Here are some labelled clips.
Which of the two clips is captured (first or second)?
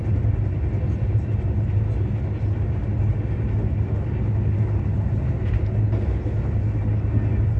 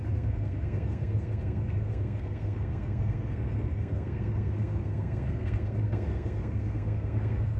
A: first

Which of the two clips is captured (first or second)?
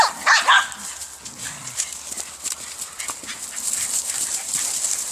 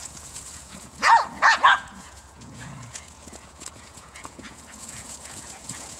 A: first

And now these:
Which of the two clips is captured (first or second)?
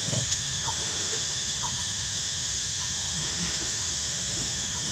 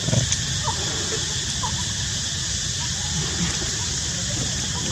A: second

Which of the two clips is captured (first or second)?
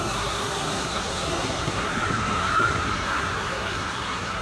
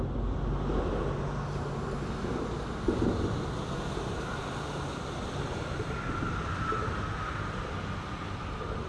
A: second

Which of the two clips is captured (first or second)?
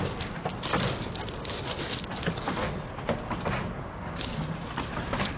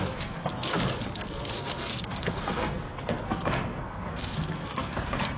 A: first